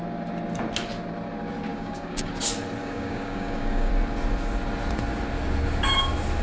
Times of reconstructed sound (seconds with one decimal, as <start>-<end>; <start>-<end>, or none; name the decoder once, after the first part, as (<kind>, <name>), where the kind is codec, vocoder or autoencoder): 1.7-2.3 (codec, DAC); 2.8-3.9